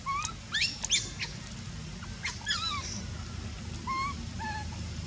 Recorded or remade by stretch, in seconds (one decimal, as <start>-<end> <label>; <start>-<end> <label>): 0.0-5.1 recorded